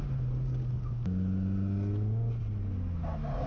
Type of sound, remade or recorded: recorded